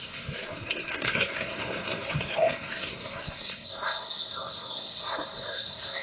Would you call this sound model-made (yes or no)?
yes